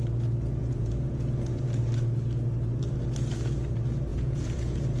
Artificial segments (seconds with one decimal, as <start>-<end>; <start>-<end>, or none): 0.6-1.8; 4.1-5.0